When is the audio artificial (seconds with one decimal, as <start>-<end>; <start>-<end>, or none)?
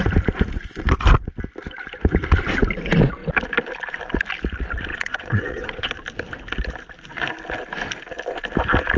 4.9-5.9